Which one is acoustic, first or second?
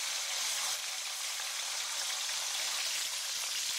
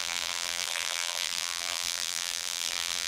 first